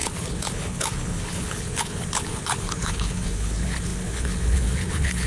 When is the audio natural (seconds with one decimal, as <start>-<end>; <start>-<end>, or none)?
none